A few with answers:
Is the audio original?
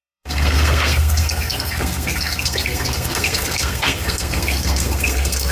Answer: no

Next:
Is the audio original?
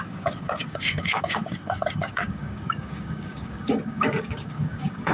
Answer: no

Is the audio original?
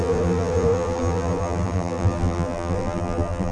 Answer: no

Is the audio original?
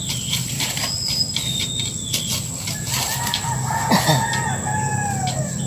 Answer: yes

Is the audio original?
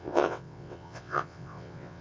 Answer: no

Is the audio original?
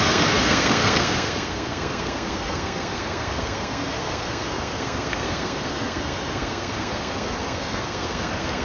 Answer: no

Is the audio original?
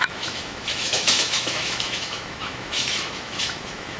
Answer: no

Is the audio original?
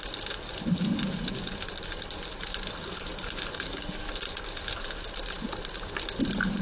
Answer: yes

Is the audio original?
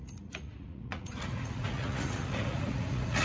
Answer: no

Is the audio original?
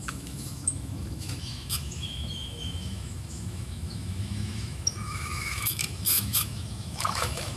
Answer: no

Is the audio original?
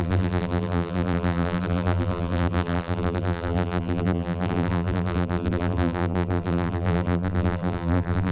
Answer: no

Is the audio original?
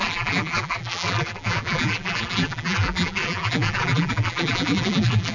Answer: no